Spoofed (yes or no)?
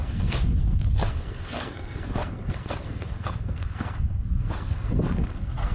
yes